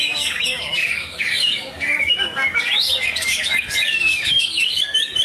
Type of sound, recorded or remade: remade